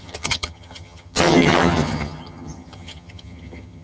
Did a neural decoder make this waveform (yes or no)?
yes